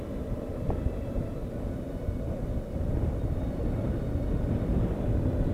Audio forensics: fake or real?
real